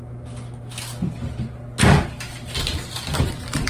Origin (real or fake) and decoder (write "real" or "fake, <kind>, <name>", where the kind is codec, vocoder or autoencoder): real